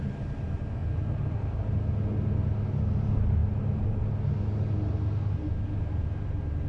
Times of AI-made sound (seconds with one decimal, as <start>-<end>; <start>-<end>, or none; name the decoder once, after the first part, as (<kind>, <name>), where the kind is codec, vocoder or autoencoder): none

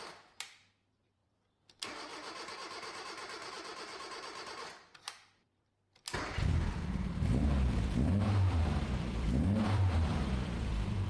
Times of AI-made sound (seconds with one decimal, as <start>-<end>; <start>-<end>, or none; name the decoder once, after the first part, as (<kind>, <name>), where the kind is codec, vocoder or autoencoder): 0.0-1.2 (vocoder, BigVGAN v2); 1.9-11.1

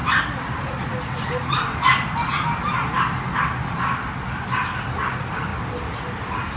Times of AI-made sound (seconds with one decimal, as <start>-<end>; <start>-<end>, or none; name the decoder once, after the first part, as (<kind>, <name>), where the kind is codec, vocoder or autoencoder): none

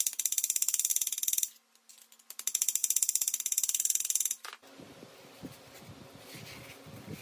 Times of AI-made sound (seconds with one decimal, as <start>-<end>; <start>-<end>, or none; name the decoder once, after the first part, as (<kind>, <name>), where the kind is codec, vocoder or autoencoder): none

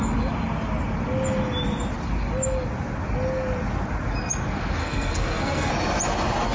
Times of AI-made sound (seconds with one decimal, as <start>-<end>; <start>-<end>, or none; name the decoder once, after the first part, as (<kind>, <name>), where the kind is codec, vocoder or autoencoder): 4.8-5.7 (codec, SNAC)